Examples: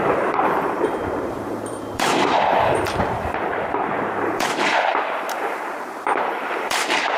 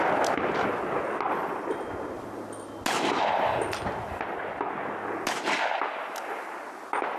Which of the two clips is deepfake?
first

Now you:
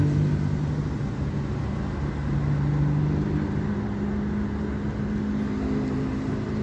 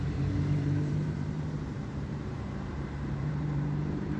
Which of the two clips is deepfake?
second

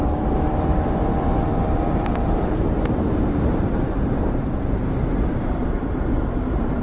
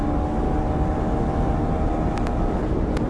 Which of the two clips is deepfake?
first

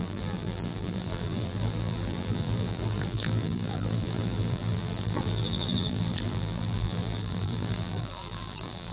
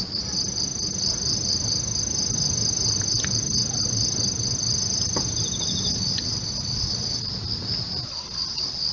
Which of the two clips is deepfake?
first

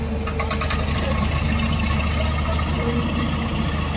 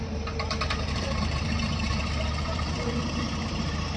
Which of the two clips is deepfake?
second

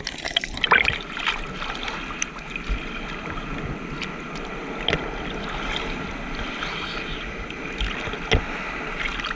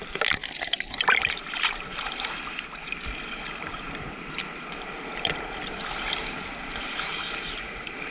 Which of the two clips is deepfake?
second